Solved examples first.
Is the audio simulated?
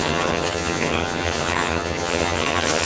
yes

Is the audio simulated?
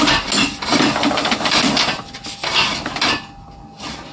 no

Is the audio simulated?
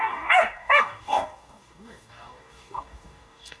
yes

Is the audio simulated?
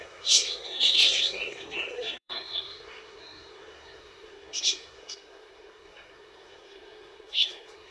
yes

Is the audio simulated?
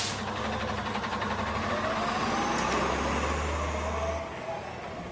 no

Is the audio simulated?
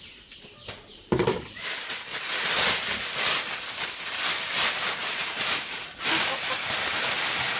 no